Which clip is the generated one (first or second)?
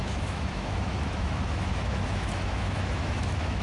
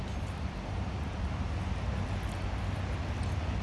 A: first